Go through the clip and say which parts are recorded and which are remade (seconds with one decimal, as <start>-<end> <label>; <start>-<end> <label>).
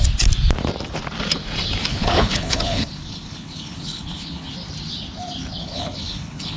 0.0-1.8 recorded; 1.8-4.5 remade; 4.5-5.6 recorded; 5.6-6.6 remade